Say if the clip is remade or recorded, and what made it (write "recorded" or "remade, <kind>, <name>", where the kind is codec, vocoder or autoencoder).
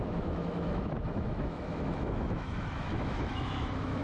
remade, autoencoder, DAC-VAE